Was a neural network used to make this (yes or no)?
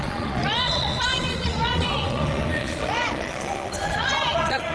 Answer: yes